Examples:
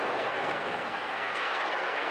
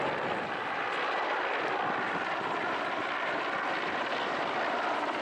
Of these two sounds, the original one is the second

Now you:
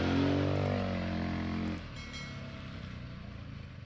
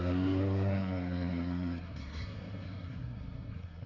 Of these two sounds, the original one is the first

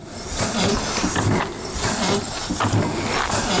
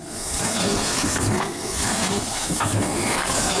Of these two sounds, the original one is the first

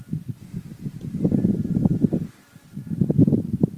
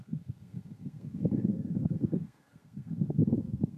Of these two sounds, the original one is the first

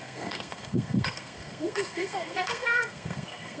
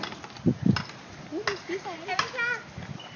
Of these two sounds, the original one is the second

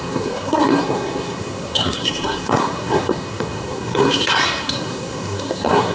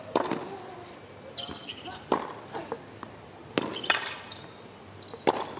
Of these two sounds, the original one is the second